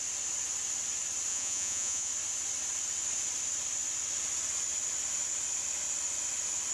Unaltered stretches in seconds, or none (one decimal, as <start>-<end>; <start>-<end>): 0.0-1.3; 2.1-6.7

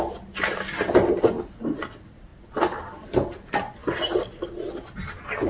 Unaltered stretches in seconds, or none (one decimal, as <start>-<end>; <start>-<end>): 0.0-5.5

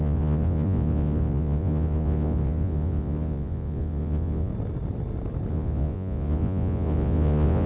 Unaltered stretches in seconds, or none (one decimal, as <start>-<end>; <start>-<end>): 4.5-5.5

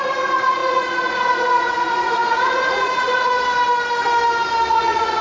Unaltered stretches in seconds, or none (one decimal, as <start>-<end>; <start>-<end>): 3.3-4.7

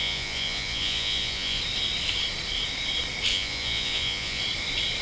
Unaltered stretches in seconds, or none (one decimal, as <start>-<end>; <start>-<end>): 1.6-3.3; 4.4-5.0

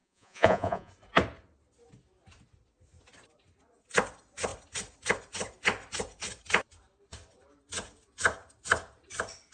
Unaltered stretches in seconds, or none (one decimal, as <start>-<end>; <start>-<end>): 0.9-9.5

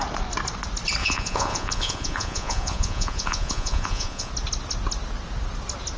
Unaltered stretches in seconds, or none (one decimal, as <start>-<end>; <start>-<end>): 0.0-1.0; 4.3-6.0